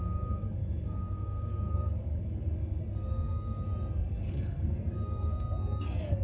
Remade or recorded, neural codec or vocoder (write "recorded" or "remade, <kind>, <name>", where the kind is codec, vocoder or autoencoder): remade, codec, SNAC